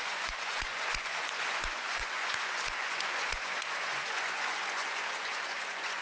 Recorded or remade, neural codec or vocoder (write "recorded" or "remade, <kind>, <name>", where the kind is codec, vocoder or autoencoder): remade, vocoder, Vocos